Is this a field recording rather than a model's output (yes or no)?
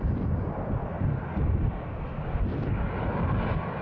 yes